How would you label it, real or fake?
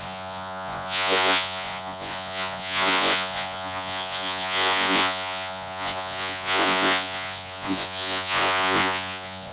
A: fake